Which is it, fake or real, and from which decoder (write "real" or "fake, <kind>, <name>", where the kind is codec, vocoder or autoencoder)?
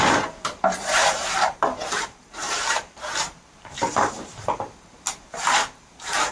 fake, vocoder, BigVGAN v2